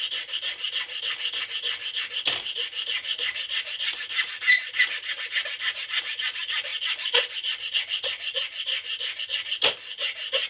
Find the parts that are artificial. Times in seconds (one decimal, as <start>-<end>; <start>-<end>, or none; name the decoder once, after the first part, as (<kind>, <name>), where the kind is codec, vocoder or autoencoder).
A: none